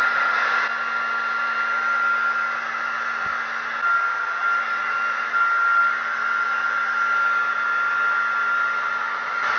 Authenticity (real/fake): real